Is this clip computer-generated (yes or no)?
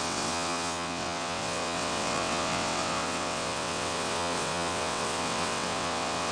yes